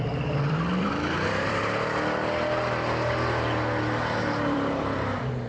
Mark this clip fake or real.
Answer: fake